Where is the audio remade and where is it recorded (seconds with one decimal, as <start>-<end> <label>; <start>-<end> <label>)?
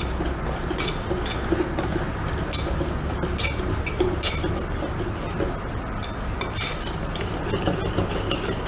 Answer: 0.0-5.3 recorded; 5.3-7.5 remade; 7.5-8.7 recorded